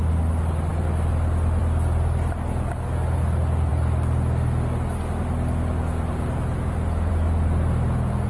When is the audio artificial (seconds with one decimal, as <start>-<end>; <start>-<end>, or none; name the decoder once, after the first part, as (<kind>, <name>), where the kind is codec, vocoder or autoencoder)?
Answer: none